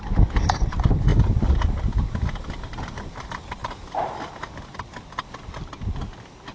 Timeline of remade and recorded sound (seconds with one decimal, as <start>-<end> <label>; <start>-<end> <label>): 0.0-3.6 recorded; 3.6-4.1 remade; 4.1-6.5 recorded